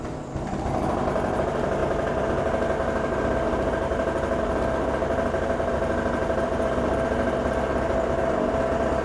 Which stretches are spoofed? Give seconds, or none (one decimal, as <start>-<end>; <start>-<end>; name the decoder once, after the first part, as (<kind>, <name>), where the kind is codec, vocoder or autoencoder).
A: none